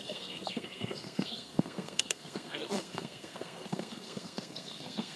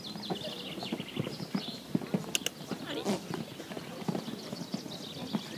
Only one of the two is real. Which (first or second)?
second